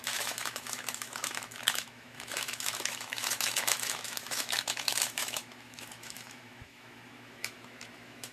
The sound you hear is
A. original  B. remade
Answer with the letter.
B